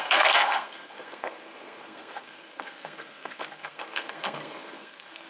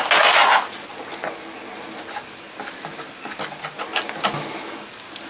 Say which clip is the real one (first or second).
second